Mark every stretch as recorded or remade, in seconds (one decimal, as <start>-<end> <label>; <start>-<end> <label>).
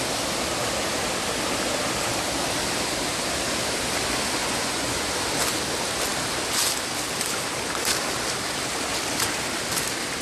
0.0-4.4 recorded; 4.4-5.1 remade; 5.1-10.2 recorded